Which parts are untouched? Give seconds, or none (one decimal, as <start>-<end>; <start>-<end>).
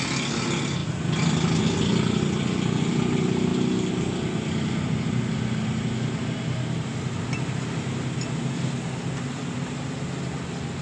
0.0-10.8